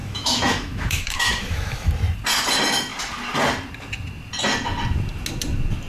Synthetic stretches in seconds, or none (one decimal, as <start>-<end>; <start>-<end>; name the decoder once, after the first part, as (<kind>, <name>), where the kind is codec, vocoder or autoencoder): 0.0-1.9 (autoencoder, DAC-VAE)

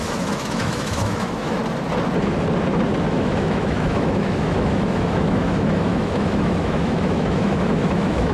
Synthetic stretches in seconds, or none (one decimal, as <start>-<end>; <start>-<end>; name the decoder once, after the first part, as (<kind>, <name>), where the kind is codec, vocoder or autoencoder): 0.0-1.6 (autoencoder, DAC-VAE); 3.1-8.3